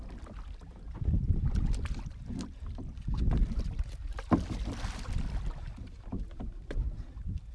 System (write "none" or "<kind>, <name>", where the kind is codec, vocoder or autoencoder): none